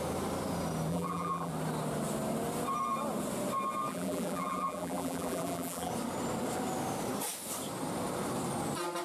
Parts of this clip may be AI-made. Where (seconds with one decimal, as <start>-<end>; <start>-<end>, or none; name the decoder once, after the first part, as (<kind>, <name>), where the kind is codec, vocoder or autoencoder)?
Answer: 0.9-1.5 (vocoder, BigVGAN v2); 3.9-5.9